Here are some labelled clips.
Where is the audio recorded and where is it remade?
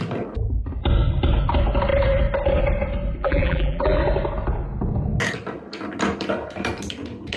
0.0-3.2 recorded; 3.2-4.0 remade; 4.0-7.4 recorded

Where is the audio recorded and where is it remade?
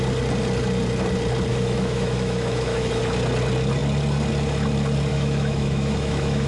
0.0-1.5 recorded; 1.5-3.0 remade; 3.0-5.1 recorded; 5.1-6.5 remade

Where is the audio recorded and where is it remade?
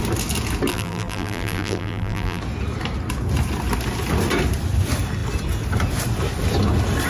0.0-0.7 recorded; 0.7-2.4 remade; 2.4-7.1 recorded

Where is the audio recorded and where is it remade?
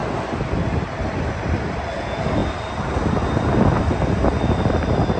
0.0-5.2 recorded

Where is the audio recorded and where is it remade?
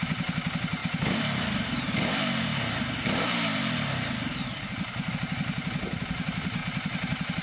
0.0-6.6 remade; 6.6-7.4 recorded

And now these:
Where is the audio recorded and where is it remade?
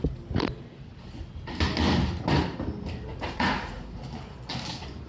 0.0-3.1 recorded; 3.1-4.0 remade; 4.0-5.1 recorded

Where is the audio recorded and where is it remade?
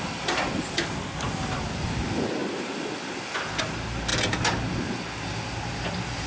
0.0-6.3 recorded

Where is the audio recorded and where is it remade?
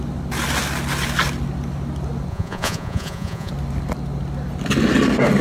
0.0-2.3 recorded; 2.3-3.5 remade; 3.5-5.4 recorded